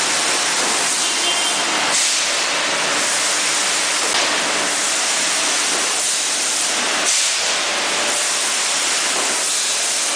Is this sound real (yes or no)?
yes